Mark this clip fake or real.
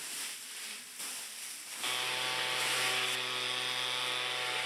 real